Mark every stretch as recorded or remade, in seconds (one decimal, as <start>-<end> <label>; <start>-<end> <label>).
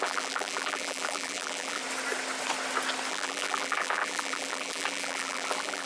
0.0-1.8 remade; 1.8-3.1 recorded; 3.1-5.9 remade